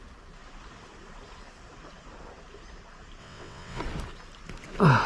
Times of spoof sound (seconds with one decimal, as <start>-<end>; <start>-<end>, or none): 3.2-3.8